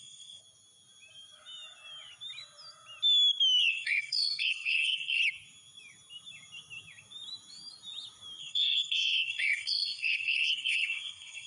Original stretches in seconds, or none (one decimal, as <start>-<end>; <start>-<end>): 0.4-3.7; 5.2-8.4